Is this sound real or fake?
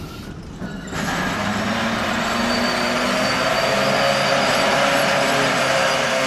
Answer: real